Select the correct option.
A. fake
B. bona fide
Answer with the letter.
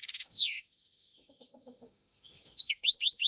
A